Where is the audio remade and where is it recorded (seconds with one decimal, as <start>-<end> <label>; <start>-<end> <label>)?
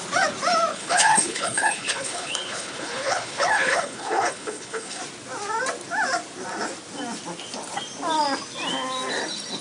0.0-0.7 recorded; 0.7-5.0 remade; 5.0-9.6 recorded